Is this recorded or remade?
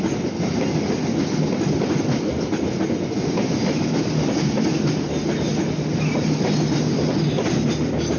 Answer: recorded